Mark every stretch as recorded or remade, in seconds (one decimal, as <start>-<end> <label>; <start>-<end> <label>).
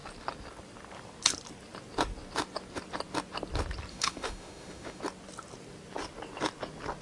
0.0-3.9 recorded; 3.9-5.0 remade; 5.0-7.0 recorded